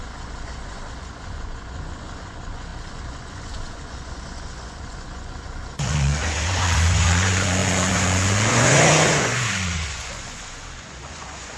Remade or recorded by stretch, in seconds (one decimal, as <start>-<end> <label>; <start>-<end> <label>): 0.0-11.6 remade